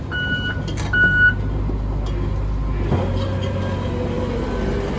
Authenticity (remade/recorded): recorded